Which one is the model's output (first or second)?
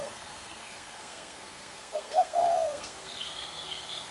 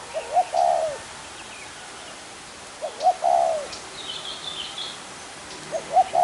first